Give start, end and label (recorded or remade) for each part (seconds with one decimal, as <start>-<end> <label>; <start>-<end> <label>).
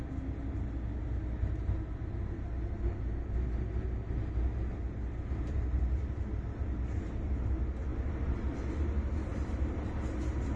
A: 0.0-10.6 recorded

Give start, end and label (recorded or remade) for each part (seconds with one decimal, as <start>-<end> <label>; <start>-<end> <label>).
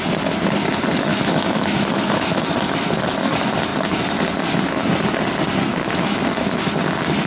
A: 0.0-1.1 recorded; 1.1-2.6 remade; 2.6-5.7 recorded; 5.7-6.7 remade; 6.7-7.3 recorded